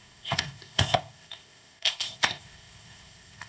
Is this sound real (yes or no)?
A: no